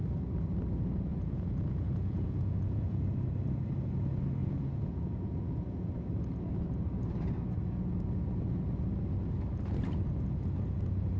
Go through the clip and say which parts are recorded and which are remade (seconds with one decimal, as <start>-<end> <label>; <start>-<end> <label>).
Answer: 0.0-1.1 recorded; 1.1-3.0 remade; 3.0-4.4 recorded; 4.4-5.9 remade; 5.9-11.2 recorded